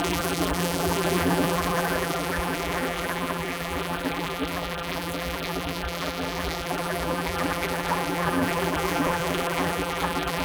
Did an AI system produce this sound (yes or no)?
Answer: yes